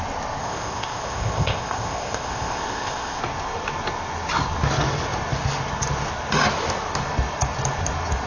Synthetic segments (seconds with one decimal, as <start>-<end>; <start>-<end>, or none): 0.4-3.2